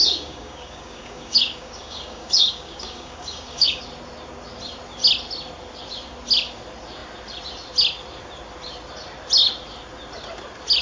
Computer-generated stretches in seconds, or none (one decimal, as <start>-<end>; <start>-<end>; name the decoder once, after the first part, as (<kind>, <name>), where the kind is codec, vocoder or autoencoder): 0.0-3.8 (codec, DAC)